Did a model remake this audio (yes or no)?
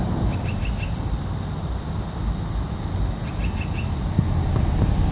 no